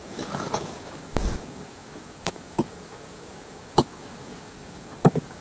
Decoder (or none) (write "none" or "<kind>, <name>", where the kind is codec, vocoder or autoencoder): codec, DAC